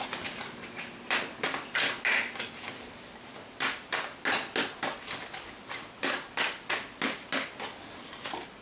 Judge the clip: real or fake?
real